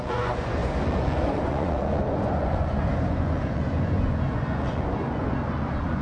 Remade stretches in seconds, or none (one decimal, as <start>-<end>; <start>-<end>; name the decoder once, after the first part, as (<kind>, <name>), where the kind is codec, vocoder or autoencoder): 0.0-6.0 (vocoder, Vocos)